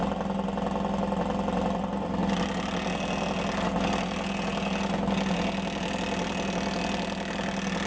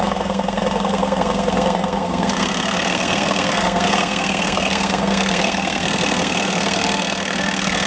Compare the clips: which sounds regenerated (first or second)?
second